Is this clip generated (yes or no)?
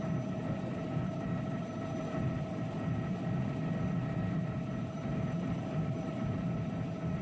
yes